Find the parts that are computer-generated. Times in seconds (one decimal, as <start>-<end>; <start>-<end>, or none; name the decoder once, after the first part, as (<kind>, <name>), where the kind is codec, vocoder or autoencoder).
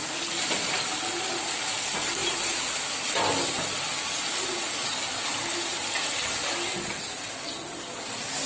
none